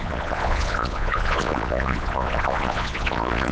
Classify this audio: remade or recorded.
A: remade